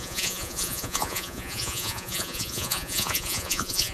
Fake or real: fake